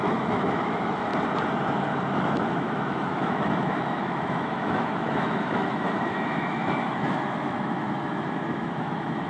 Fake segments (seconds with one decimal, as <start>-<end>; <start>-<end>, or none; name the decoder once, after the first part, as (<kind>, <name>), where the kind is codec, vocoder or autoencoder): 0.0-1.1 (autoencoder, DAC-VAE); 2.1-9.3

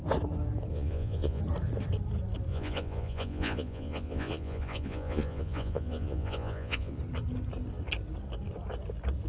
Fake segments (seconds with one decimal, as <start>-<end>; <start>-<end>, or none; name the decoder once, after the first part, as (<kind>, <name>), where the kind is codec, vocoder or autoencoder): 0.7-1.4 (vocoder, Vocos); 2.5-7.0

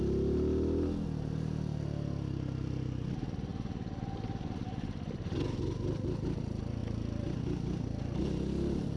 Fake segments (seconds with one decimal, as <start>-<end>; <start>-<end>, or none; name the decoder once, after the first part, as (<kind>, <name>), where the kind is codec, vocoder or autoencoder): 3.5-4.4 (vocoder, BigVGAN v2); 6.8-8.2

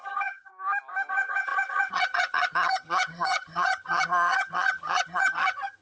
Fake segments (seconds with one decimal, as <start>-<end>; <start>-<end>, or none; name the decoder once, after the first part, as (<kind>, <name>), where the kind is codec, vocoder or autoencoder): 0.0-0.5 (vocoder, HiFi-GAN); 1.1-5.8

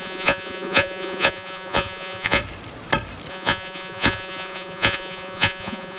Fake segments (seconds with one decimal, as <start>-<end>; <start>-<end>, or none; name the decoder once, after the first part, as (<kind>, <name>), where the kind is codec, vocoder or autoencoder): 0.0-2.4 (vocoder, Vocos); 3.3-6.0

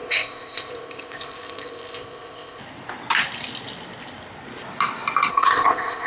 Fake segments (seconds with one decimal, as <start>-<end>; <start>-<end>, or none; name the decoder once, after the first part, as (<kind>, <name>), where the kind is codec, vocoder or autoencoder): 0.0-2.6 (codec, ZipCodec); 5.3-6.1

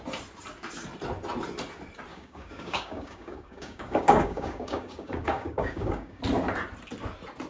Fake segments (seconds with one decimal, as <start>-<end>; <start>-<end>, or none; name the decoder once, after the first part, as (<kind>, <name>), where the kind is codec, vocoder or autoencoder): 2.1-6.2 (codec, DAC)

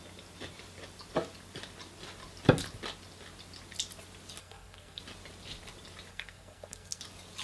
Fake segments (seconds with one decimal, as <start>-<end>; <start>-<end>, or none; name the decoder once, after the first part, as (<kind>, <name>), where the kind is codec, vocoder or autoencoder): 4.4-5.0 (codec, SNAC); 6.1-7.0